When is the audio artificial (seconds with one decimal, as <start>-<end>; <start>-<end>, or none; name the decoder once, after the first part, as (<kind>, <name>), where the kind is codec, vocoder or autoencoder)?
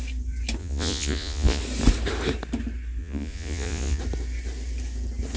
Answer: 0.6-1.6 (vocoder, Vocos); 3.0-4.0